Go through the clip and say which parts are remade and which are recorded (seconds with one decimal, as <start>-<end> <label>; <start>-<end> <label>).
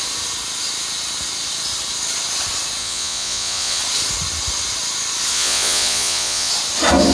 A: 0.0-2.8 recorded; 2.8-3.8 remade; 3.8-5.3 recorded; 5.3-6.5 remade; 6.5-7.1 recorded